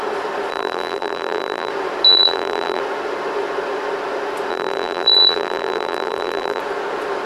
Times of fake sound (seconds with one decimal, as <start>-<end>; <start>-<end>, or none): 0.5-1.7; 2.1-2.8; 4.5-6.6